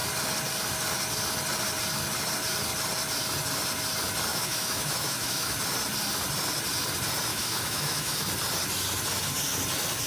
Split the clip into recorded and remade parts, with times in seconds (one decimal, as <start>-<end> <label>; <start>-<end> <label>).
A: 0.0-4.3 recorded; 4.3-5.6 remade; 5.6-7.3 recorded; 7.3-8.3 remade; 8.3-10.1 recorded